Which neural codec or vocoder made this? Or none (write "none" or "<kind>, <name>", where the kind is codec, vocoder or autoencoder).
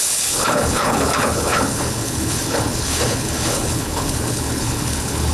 codec, HILCodec